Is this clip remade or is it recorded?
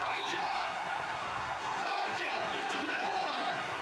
remade